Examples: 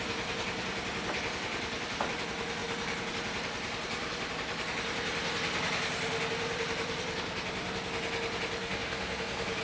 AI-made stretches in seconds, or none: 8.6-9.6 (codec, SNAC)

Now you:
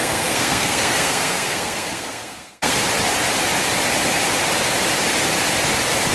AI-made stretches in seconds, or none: 0.0-2.9 (codec, SNAC)

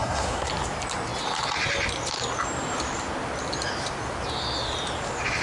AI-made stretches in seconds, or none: 0.0-0.5 (codec, SNAC)

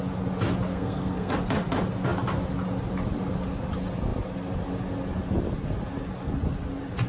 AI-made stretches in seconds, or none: 0.7-1.3 (codec, SNAC)